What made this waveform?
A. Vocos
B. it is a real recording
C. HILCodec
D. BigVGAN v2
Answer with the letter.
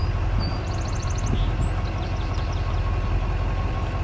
B